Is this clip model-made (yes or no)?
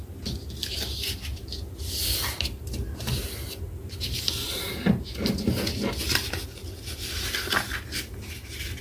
no